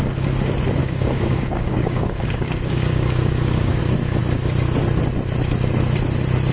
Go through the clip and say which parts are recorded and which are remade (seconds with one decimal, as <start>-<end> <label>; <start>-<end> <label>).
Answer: 0.0-0.8 recorded; 0.8-3.8 remade; 3.8-6.5 recorded